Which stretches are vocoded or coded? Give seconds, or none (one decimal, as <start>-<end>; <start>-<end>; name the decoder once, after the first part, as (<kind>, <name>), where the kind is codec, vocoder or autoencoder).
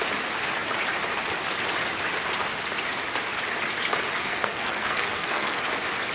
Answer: 4.2-5.6 (codec, SNAC)